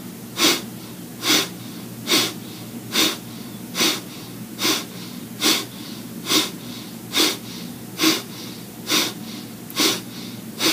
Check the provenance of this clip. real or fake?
real